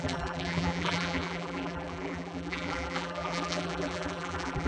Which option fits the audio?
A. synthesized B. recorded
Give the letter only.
A